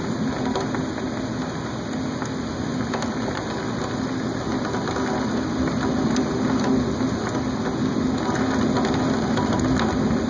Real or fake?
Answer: real